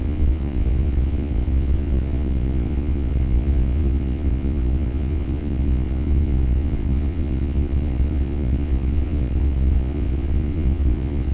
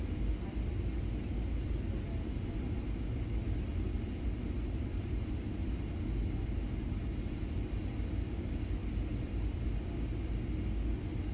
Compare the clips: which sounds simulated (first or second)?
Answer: first